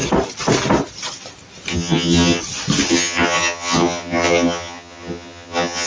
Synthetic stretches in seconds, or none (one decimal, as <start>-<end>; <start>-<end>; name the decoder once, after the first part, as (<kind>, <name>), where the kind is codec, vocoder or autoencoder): 1.7-2.4 (vocoder, HiFi-GAN); 2.9-5.9